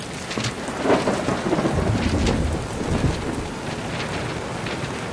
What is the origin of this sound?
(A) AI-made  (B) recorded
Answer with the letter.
B